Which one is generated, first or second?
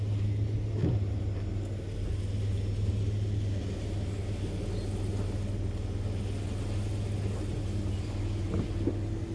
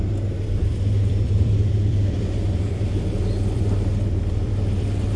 second